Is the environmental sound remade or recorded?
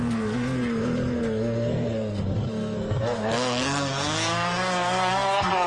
remade